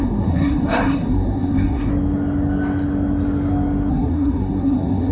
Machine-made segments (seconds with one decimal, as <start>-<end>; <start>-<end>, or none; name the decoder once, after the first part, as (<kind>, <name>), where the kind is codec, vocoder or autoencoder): 0.0-1.9 (codec, SNAC); 3.9-5.1